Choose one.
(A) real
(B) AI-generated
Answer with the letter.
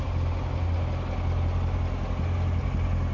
A